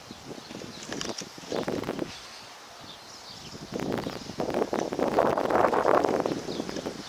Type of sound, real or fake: real